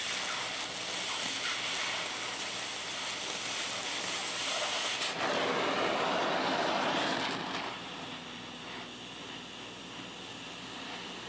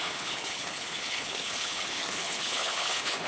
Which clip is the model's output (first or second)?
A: second